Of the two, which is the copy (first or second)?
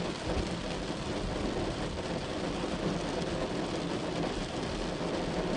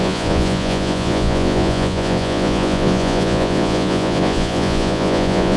second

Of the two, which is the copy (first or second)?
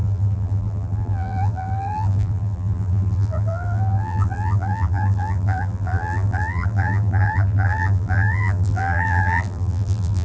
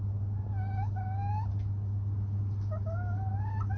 first